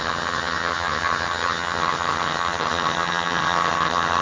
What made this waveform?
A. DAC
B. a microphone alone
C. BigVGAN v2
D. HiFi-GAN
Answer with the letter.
D